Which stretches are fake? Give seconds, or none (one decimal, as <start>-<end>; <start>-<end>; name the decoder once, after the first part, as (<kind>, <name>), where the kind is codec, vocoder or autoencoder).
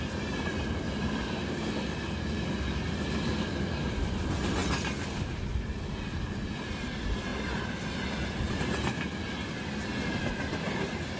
none